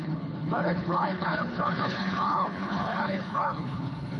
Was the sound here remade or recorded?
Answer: remade